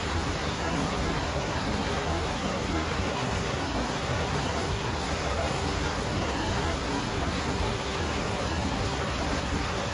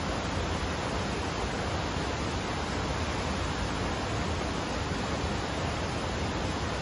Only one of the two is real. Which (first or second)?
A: second